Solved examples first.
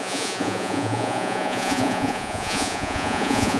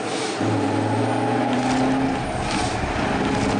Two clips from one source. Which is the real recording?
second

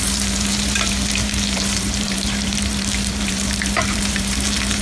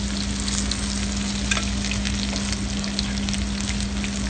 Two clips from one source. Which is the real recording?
second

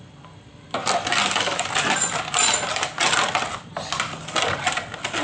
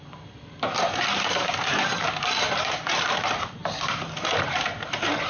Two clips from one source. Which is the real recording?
first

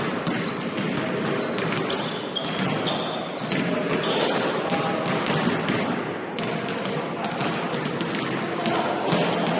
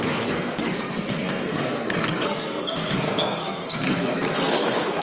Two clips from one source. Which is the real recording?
first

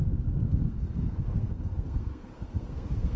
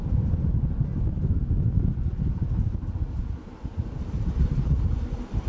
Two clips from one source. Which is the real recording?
second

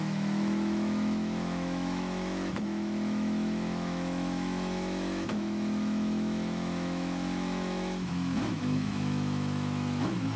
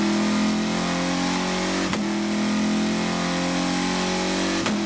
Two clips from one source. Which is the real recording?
second